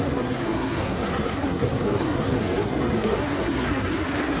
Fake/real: fake